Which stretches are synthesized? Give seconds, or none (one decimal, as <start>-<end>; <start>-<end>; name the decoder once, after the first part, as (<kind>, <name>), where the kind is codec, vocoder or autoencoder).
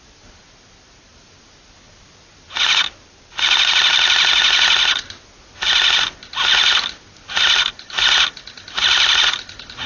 none